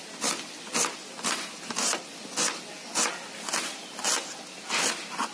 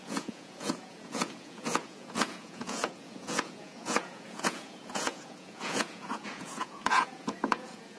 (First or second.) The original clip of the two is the first